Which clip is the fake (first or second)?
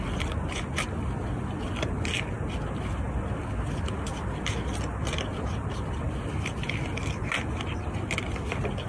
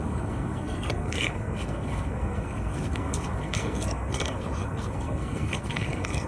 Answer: second